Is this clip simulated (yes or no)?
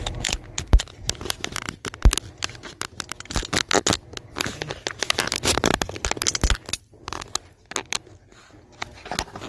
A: no